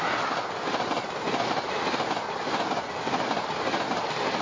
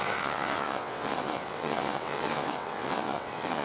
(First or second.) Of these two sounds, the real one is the first